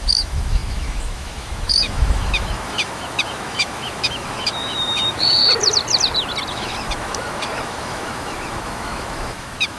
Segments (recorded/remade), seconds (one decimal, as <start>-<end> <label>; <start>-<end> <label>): 0.0-5.4 remade; 5.4-6.5 recorded; 6.5-9.8 remade